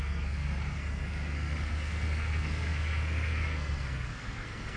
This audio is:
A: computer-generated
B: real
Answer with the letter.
A